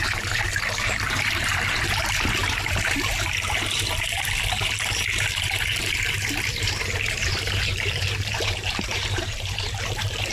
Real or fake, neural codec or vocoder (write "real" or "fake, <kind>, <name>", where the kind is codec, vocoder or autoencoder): fake, vocoder, BigVGAN v2